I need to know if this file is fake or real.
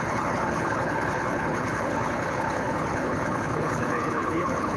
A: fake